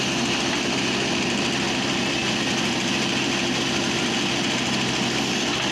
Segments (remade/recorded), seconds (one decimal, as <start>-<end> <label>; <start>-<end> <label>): 0.0-2.2 recorded; 2.2-2.9 remade; 2.9-5.7 recorded